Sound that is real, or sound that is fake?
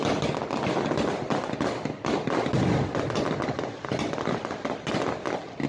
real